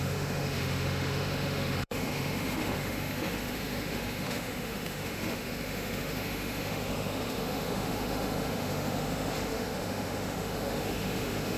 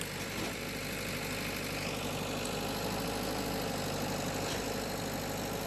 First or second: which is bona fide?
second